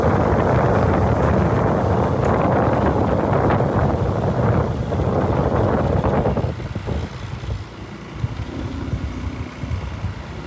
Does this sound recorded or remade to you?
recorded